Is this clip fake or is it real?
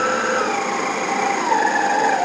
real